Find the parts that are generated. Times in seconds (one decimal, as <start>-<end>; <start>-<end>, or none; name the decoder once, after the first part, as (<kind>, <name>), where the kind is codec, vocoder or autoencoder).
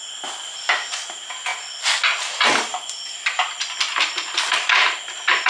none